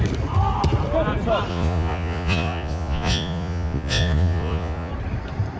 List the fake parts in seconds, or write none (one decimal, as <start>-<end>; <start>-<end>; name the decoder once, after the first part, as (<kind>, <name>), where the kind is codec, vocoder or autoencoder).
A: 1.5-4.9 (vocoder, Vocos)